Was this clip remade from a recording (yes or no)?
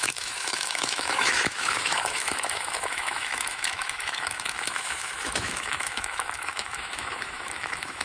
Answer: yes